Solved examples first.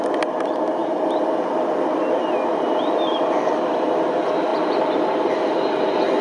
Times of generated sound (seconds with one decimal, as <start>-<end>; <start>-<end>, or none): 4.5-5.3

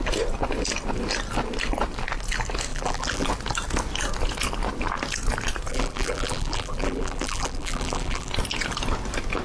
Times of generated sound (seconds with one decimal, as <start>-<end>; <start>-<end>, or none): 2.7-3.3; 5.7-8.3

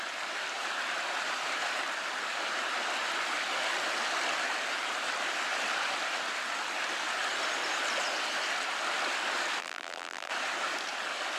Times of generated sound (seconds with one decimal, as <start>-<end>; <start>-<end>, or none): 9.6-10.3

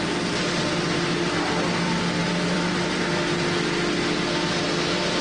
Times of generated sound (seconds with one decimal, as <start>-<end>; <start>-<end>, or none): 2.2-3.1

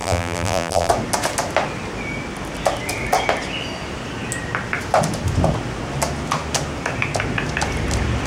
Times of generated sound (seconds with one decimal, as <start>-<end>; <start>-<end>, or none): 0.0-0.9

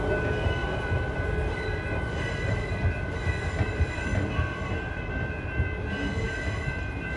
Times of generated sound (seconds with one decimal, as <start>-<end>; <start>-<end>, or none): 0.6-4.9